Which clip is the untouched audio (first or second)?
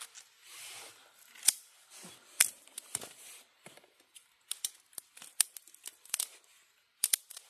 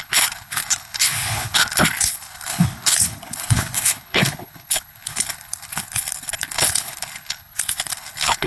first